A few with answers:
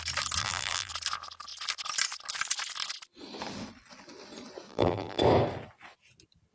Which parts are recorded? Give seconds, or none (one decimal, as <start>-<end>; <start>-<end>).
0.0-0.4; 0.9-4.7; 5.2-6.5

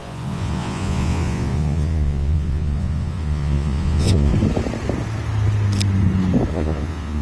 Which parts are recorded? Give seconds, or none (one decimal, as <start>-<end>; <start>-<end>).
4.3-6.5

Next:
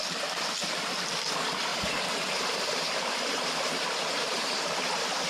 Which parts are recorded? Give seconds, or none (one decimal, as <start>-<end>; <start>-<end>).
0.0-1.7; 4.7-5.3

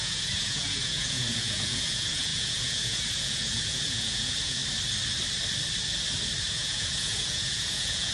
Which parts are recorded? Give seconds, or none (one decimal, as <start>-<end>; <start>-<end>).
4.6-6.5

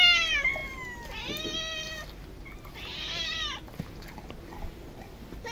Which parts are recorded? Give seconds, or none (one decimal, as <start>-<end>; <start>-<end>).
0.0-5.5